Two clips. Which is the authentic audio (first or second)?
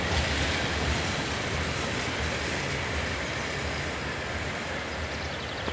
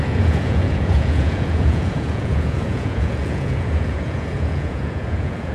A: first